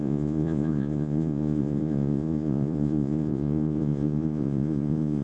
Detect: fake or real fake